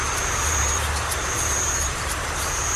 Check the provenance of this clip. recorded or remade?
remade